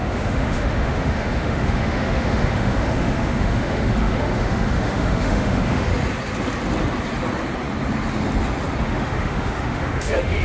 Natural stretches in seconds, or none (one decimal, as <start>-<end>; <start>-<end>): 5.9-8.8